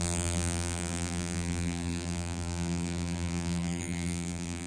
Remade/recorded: remade